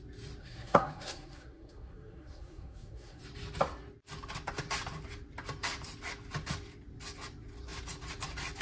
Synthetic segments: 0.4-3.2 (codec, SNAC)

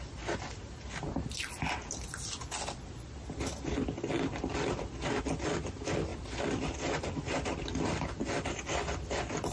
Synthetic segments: none

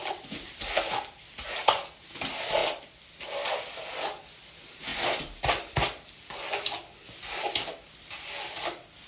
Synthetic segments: none

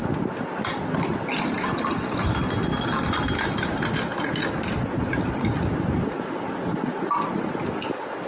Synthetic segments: none

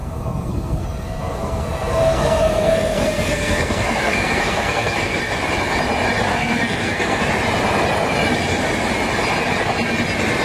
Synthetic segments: 0.0-5.2 (codec, SNAC); 6.3-7.3

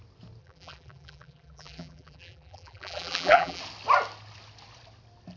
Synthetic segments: 0.4-3.6 (vocoder, BigVGAN v2)